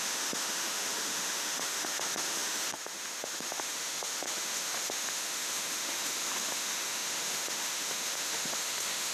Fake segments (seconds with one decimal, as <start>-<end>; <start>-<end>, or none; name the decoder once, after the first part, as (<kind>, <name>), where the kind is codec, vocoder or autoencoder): 0.0-9.1 (autoencoder, DAC-VAE)